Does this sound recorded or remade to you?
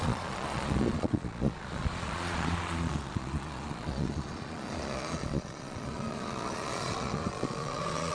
remade